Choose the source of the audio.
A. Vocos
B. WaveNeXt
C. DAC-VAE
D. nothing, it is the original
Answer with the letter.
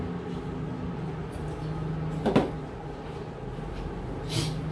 D